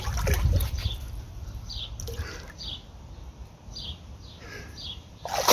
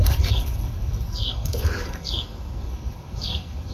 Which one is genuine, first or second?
first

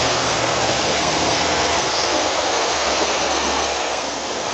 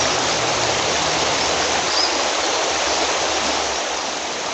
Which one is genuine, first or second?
second